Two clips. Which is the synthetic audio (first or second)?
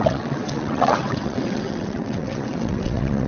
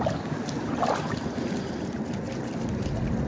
first